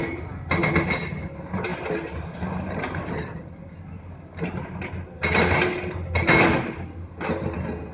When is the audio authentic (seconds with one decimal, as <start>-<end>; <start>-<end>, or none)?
0.0-7.9